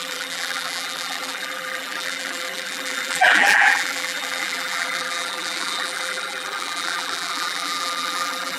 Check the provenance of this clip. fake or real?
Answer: fake